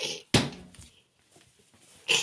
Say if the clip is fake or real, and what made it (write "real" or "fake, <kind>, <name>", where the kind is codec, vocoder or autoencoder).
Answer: real